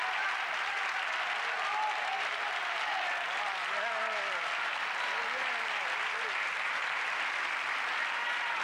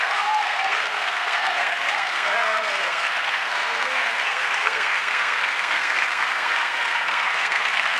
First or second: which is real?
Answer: first